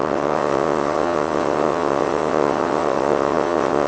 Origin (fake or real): fake